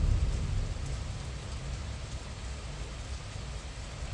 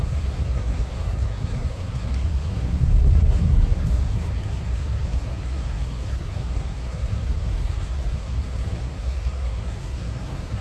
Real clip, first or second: first